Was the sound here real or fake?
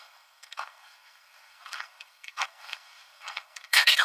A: fake